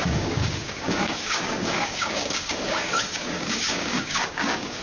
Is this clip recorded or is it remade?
remade